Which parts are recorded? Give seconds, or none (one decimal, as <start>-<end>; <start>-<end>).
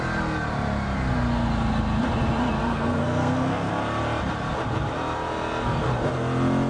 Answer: 0.0-2.6; 3.7-6.7